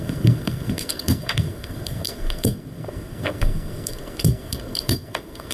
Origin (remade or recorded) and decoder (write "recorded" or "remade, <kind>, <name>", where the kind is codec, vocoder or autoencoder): remade, codec, SNAC